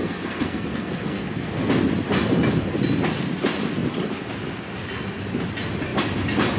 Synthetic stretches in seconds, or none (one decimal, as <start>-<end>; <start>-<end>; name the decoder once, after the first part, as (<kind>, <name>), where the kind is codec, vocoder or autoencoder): 0.0-1.7 (codec, SNAC)